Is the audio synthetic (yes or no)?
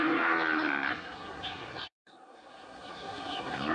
yes